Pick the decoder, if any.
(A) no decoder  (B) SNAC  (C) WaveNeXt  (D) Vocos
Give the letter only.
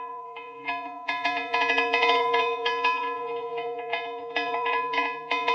D